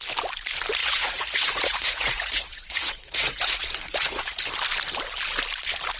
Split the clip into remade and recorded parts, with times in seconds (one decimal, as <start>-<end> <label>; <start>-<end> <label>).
0.0-0.8 recorded; 0.8-4.4 remade; 4.4-6.0 recorded